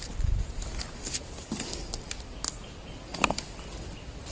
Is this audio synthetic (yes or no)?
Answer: no